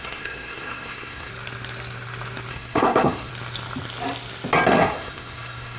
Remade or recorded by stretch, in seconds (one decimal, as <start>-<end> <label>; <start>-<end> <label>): 0.0-1.3 remade; 1.3-2.5 recorded; 2.5-3.3 remade; 3.3-4.8 recorded; 4.8-5.8 remade